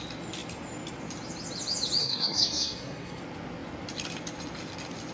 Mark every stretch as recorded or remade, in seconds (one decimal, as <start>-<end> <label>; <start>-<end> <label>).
0.0-2.0 recorded; 2.0-3.2 remade; 3.2-5.1 recorded